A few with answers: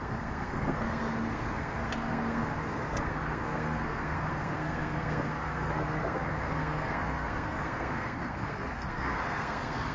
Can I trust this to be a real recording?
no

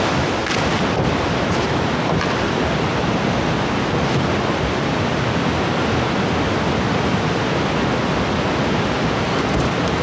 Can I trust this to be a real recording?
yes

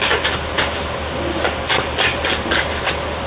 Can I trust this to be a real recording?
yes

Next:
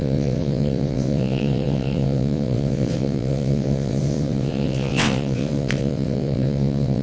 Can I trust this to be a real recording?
no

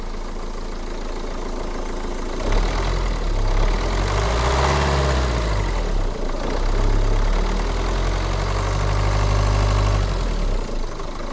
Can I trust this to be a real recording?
yes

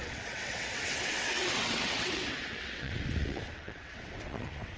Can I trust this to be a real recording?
no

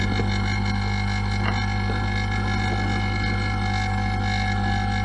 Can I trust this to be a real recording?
yes